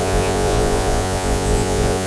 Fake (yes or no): yes